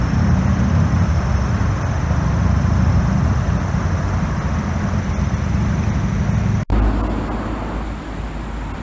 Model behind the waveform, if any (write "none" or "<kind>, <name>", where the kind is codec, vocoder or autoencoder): none